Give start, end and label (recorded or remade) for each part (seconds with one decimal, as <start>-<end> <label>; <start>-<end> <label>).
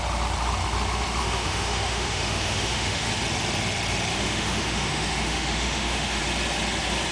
0.0-1.2 recorded; 1.2-3.1 remade; 3.1-4.1 recorded; 4.1-6.2 remade; 6.2-7.1 recorded